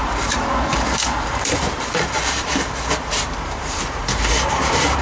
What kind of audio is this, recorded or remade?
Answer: remade